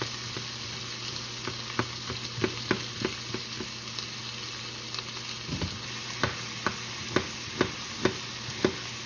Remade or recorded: recorded